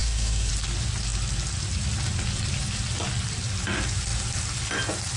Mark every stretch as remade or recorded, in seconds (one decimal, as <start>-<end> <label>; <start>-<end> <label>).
0.0-0.5 remade; 0.5-5.2 recorded